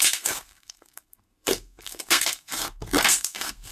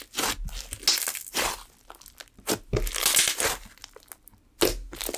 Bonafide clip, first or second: second